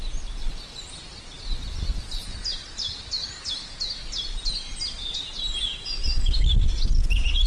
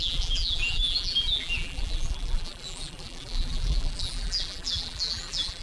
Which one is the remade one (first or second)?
second